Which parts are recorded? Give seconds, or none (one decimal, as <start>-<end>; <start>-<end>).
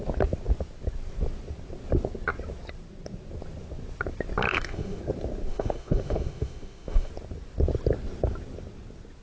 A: 0.0-4.5; 5.0-5.5; 7.1-9.2